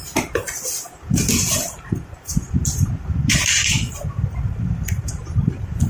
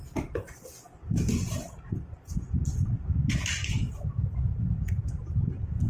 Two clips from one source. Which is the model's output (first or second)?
first